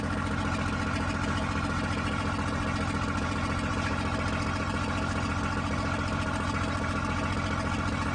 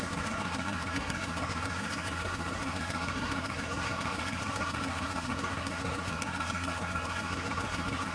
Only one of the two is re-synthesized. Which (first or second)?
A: second